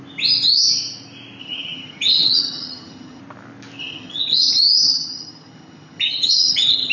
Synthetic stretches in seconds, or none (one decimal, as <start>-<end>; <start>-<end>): 1.4-3.2; 3.8-4.5; 4.9-6.9